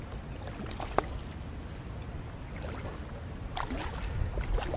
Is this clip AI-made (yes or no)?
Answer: no